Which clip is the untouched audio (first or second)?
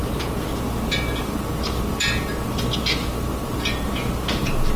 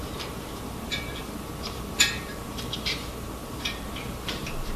first